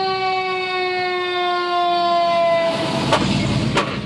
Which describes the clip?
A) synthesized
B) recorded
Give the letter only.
B